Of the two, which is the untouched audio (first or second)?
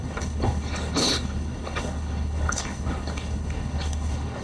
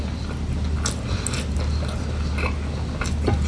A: second